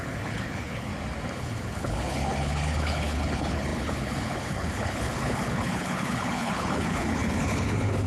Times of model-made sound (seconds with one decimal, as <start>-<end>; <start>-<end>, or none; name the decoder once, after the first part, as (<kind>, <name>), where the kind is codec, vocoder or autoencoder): 0.0-0.9 (codec, HILCodec); 1.4-8.1